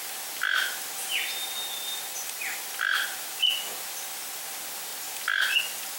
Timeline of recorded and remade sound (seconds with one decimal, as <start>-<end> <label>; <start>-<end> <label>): 0.0-6.0 recorded

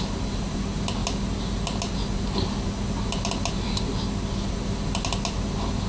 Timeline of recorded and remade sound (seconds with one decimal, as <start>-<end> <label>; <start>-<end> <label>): 0.0-5.9 recorded

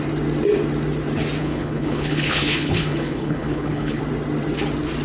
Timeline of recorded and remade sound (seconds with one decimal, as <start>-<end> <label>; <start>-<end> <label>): 0.0-1.4 recorded; 1.4-4.0 remade; 4.0-5.0 recorded